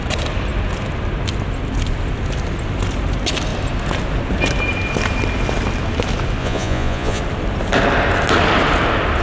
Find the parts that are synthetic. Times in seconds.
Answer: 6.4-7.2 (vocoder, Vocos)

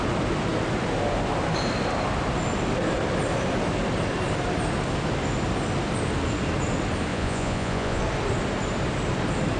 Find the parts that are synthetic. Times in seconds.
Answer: 7.1-8.0 (vocoder, Vocos)

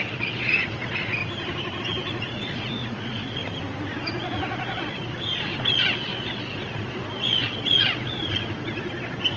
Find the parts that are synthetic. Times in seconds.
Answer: 0.0-1.2 (vocoder, Vocos); 1.8-3.4; 4.0-9.4

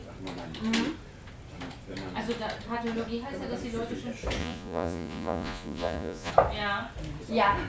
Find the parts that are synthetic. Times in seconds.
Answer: 4.4-6.3 (vocoder, Vocos)

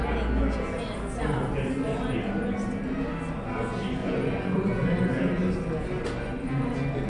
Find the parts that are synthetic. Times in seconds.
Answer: 4.0-5.0 (vocoder, Vocos)